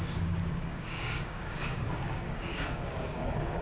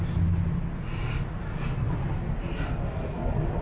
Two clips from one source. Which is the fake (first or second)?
first